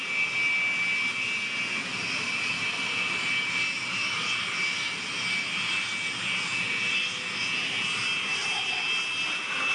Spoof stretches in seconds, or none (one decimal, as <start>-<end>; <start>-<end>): none